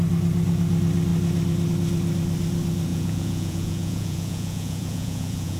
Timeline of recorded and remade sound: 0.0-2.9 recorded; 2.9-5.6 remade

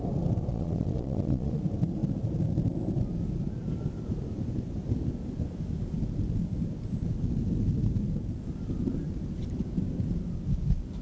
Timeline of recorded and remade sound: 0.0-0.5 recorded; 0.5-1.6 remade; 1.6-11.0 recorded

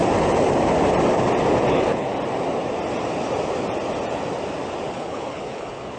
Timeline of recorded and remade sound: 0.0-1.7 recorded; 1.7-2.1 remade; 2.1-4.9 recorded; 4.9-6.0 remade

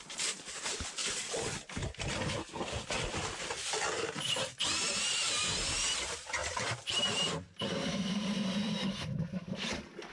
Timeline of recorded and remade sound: 0.0-1.0 remade; 1.0-4.9 recorded; 4.9-10.1 remade

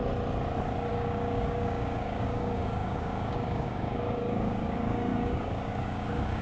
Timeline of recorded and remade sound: 0.0-0.9 recorded; 0.9-6.4 remade

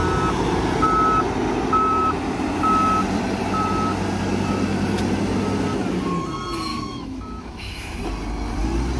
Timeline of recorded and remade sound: 0.0-6.7 recorded; 6.7-8.0 remade; 8.0-9.0 recorded

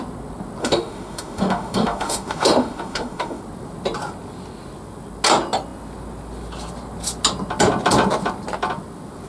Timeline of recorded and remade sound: 0.0-0.6 recorded; 0.6-3.4 remade; 3.4-9.3 recorded